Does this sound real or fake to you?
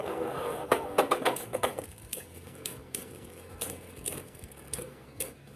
fake